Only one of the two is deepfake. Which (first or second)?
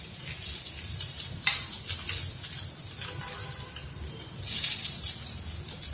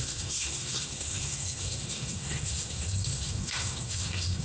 second